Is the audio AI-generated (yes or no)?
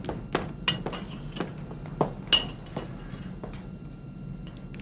no